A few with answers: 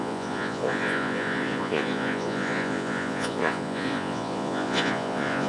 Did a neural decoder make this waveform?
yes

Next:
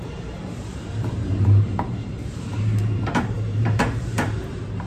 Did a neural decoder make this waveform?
yes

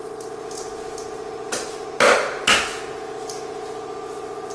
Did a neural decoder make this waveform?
no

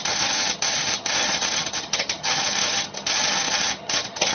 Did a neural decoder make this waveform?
yes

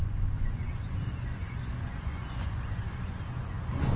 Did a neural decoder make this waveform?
yes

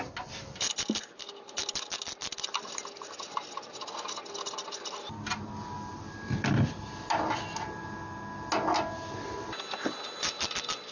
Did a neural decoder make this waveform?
no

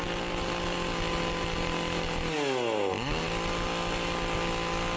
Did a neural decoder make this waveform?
no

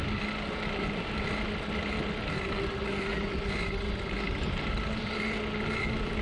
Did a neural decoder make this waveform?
no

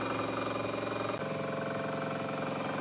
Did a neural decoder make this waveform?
no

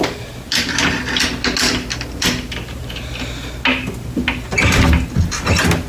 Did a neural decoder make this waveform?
no